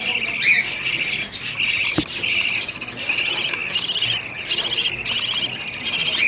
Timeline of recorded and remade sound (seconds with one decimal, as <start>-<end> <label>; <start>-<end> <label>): 0.0-6.3 recorded